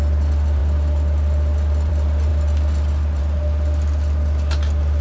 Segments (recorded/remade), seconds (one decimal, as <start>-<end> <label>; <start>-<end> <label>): 0.0-5.0 recorded